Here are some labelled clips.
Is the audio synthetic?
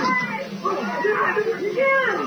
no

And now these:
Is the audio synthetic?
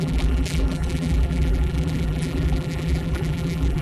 yes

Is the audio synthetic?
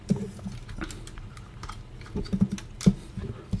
no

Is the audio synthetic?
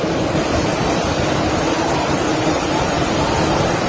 no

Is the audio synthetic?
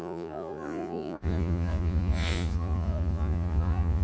yes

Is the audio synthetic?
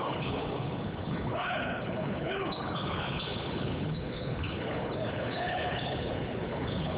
yes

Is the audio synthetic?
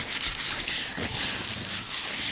no